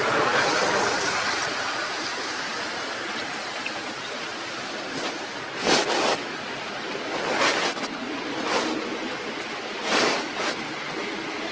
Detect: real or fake real